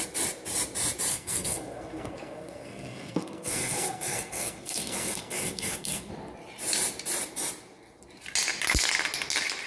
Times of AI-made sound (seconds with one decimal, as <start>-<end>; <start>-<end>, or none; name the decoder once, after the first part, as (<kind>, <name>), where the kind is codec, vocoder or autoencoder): 1.1-6.1 (codec, SNAC)